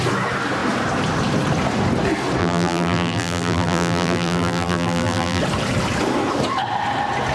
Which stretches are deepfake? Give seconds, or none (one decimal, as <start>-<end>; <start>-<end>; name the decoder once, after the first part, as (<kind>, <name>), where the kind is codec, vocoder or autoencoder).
2.4-5.4 (vocoder, BigVGAN v2)